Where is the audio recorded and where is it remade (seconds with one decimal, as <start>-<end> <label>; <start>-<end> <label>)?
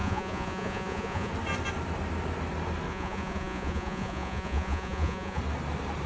0.0-1.3 remade; 1.3-2.9 recorded; 2.9-5.4 remade; 5.4-6.1 recorded